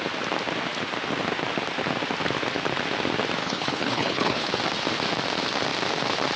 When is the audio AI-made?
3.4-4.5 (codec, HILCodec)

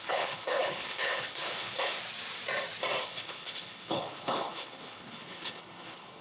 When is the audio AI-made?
0.0-2.0 (codec, HILCodec); 3.0-6.2

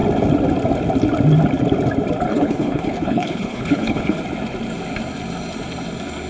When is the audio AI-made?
2.3-4.2 (codec, HILCodec)

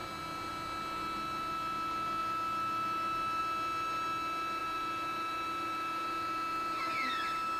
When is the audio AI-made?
4.6-6.8 (vocoder, Vocos)

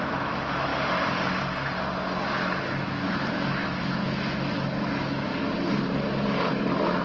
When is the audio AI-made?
0.0-0.7 (autoencoder, DAC-VAE); 2.6-5.3; 6.5-7.0

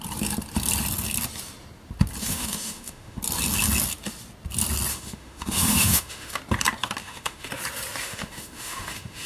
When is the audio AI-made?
2.2-3.2 (autoencoder, DAC-VAE); 4.9-6.4; 7.0-7.5; 8.0-9.3